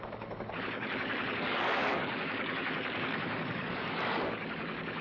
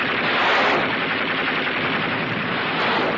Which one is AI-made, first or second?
first